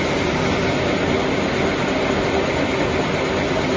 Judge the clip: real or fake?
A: real